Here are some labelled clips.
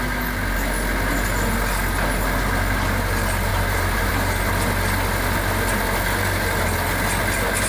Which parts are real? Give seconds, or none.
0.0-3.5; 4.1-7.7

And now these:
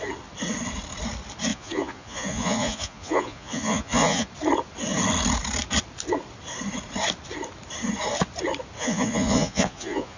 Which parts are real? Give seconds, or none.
0.0-1.5; 4.3-8.8

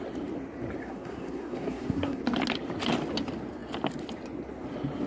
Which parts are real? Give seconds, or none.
0.0-0.8; 2.2-5.1

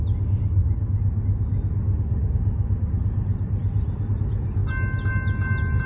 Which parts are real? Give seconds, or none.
0.0-5.9

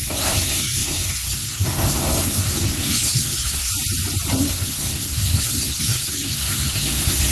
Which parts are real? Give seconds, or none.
3.7-4.4

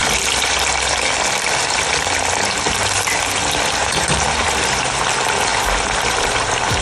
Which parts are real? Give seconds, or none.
0.0-3.8; 5.0-5.5

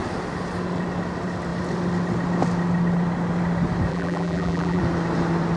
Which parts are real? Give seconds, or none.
0.0-3.9; 4.8-5.6